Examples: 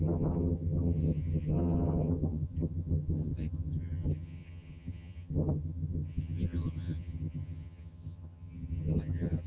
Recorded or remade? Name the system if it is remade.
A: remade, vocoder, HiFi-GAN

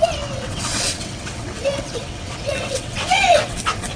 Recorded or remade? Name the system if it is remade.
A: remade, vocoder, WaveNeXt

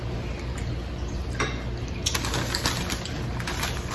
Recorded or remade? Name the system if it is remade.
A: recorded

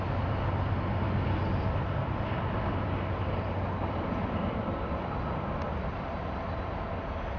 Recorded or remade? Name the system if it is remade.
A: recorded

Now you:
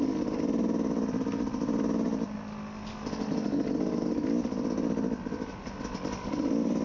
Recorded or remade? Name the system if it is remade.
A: recorded